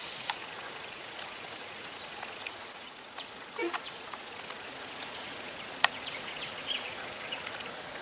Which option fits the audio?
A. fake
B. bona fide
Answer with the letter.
A